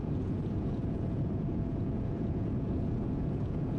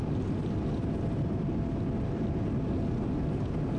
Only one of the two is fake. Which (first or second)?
first